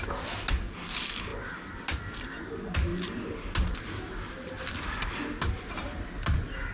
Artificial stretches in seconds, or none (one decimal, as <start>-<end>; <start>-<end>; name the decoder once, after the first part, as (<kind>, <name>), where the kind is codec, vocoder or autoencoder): none